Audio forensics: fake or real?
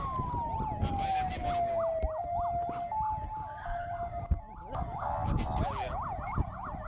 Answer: real